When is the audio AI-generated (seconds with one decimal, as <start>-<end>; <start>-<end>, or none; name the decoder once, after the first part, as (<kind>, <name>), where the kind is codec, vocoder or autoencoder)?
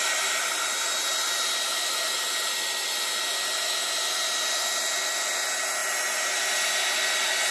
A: none